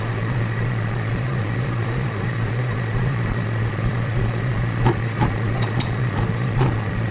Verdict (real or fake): fake